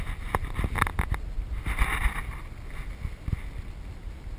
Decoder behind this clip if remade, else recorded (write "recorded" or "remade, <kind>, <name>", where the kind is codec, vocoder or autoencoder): recorded